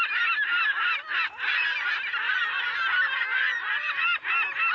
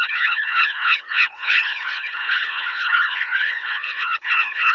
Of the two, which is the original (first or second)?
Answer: first